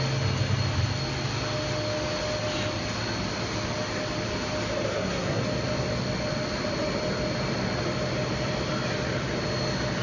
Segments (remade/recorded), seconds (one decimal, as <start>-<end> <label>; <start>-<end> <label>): 0.0-4.9 recorded; 4.9-5.4 remade; 5.4-10.0 recorded